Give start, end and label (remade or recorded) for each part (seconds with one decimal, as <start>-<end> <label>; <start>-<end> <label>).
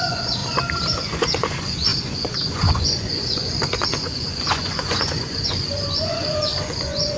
0.0-0.4 remade; 0.4-1.0 recorded; 1.0-7.2 remade